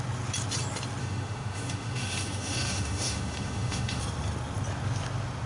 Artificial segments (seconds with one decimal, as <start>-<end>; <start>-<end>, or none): 1.0-4.0